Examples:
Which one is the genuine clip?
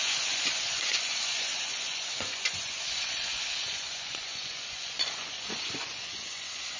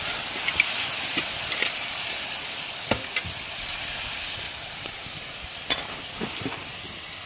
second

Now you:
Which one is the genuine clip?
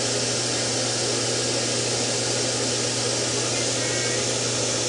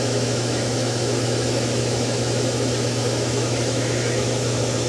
first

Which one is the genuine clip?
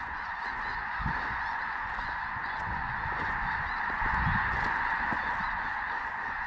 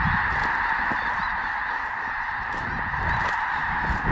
second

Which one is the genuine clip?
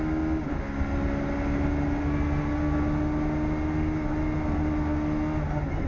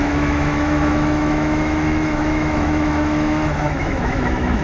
first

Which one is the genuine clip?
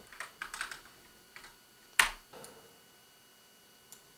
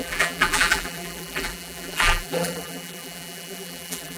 first